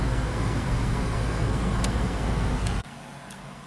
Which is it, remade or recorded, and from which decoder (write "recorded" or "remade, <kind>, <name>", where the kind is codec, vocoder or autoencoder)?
remade, codec, SNAC